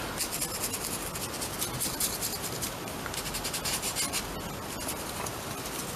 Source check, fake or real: real